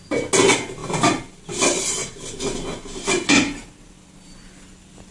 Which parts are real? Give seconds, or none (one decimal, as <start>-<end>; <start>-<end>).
0.0-5.1